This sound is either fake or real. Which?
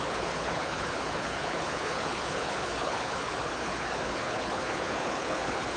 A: fake